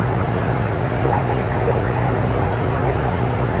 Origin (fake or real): fake